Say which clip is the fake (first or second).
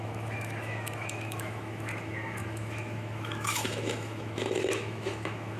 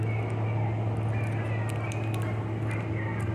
first